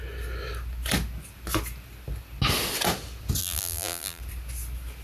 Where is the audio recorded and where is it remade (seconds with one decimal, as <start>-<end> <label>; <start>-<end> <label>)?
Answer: 0.0-3.4 recorded; 3.4-4.2 remade; 4.2-5.0 recorded